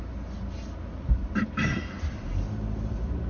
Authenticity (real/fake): real